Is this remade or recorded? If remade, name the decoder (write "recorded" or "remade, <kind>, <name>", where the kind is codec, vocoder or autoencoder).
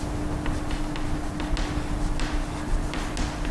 recorded